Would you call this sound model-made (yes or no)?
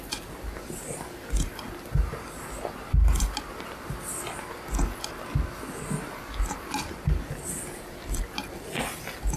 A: no